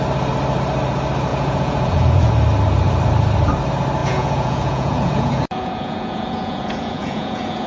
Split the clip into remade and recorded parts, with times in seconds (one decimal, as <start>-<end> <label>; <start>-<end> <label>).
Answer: 0.0-1.3 recorded; 1.3-2.3 remade; 2.3-4.0 recorded; 4.0-7.7 remade